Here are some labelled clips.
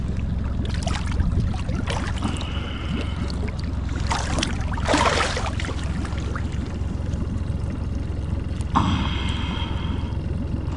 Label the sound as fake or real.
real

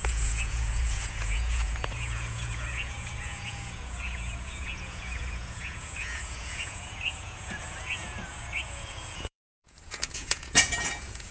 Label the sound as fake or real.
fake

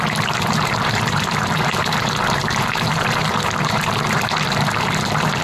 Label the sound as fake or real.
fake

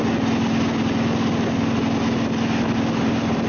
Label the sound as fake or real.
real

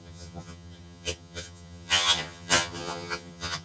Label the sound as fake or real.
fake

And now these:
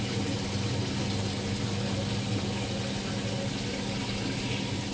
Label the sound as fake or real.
real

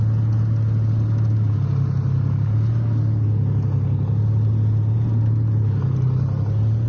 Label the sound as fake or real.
real